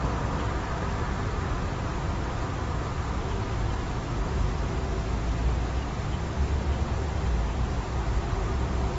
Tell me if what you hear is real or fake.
real